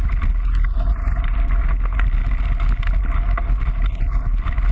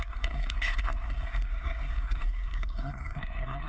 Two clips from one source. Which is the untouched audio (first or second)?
first